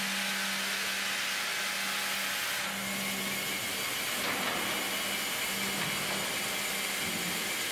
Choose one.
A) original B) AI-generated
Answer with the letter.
A